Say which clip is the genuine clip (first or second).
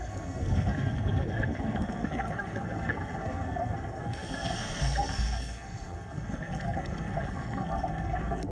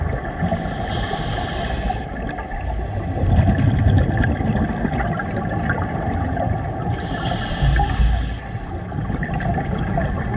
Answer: second